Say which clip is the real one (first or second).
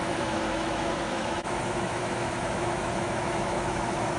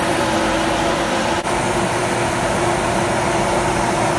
second